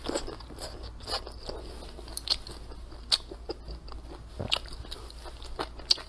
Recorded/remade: recorded